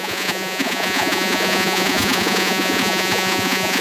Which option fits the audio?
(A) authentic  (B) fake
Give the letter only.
B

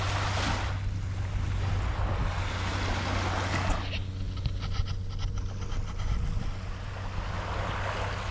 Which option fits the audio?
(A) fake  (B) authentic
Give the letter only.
B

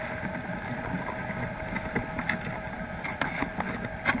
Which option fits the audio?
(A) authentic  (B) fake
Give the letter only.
A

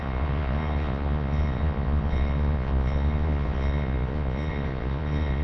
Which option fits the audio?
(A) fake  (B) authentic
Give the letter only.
A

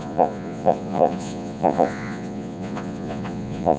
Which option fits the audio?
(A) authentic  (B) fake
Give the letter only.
B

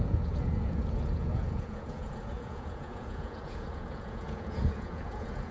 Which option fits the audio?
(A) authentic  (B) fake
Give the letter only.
B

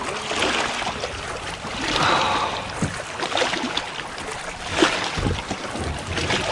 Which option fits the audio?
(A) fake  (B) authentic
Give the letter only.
B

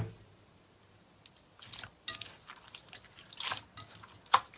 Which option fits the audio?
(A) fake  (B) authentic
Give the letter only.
B